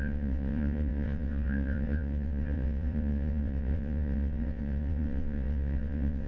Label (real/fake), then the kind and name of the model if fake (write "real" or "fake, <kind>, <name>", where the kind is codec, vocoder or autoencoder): fake, vocoder, WaveNeXt